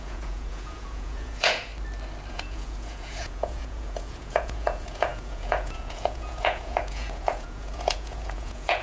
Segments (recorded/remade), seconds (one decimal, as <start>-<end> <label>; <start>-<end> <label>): 0.0-1.7 remade; 1.7-2.3 recorded; 2.3-8.8 remade